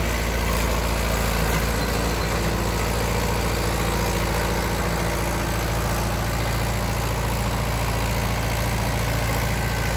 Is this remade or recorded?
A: recorded